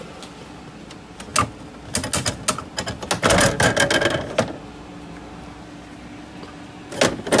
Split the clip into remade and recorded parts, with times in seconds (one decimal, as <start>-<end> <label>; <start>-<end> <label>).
0.0-7.4 recorded